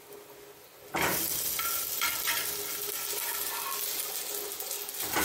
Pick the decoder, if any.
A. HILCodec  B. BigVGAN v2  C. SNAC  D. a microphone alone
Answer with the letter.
D